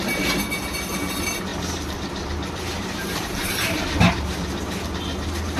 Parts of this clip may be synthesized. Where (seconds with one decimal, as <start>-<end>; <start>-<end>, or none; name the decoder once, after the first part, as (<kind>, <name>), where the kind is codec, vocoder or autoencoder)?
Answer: 1.5-4.9 (vocoder, BigVGAN v2)